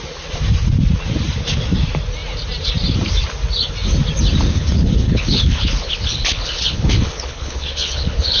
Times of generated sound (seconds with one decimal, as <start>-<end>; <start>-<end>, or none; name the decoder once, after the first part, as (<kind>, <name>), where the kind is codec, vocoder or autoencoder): 4.5-8.4 (codec, HILCodec)